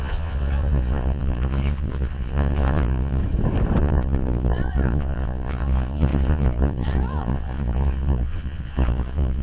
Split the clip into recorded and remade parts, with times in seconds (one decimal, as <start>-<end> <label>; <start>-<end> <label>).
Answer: 0.0-3.2 remade; 3.2-3.8 recorded; 3.8-9.4 remade